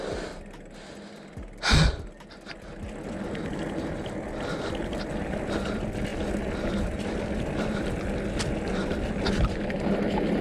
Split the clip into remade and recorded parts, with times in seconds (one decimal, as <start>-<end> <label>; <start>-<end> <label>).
0.0-10.4 recorded

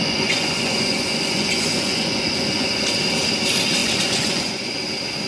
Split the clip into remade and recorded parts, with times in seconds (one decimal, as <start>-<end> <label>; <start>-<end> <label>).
0.0-2.8 remade; 2.8-3.8 recorded; 3.8-4.8 remade; 4.8-5.3 recorded

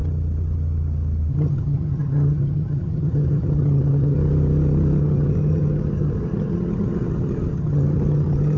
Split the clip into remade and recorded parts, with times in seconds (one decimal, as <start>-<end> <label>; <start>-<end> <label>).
0.0-1.3 recorded; 1.3-4.2 remade; 4.2-5.0 recorded; 5.0-8.6 remade

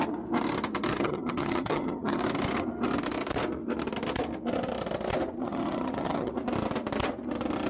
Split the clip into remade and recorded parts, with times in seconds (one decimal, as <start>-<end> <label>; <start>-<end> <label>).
0.0-0.9 recorded; 0.9-2.2 remade; 2.2-5.4 recorded; 5.4-6.3 remade; 6.3-7.7 recorded

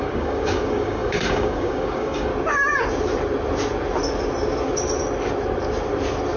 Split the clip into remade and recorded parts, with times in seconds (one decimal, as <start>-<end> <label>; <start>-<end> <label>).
0.0-2.3 remade; 2.3-6.4 recorded

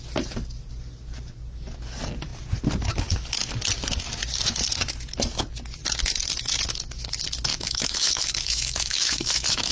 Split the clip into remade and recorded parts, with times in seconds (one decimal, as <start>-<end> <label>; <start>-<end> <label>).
0.0-7.5 recorded; 7.5-9.7 remade

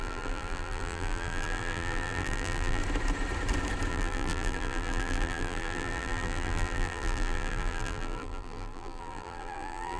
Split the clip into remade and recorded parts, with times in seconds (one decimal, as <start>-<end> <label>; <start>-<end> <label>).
0.0-2.8 remade; 2.8-3.9 recorded; 3.9-10.0 remade

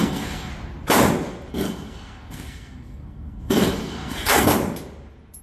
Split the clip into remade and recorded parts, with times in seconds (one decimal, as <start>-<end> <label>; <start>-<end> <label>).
0.0-0.5 remade; 0.5-1.5 recorded; 1.5-4.5 remade; 4.5-5.4 recorded